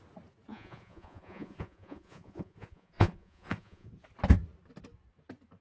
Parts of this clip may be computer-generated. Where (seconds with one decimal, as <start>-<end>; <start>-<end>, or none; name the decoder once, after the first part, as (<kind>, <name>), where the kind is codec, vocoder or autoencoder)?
0.5-3.9 (vocoder, Vocos)